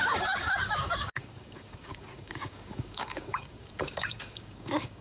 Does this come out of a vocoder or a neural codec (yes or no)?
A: yes